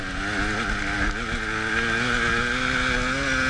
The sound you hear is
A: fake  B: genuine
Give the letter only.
B